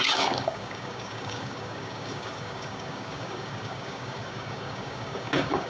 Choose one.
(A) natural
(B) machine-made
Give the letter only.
B